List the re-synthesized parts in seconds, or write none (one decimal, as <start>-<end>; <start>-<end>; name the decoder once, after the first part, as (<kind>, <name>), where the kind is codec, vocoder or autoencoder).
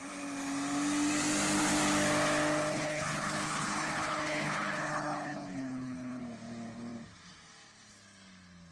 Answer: 2.7-6.2 (codec, HILCodec)